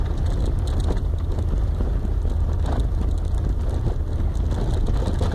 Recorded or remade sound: recorded